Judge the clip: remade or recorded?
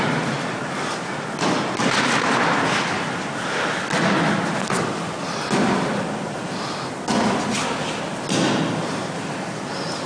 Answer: recorded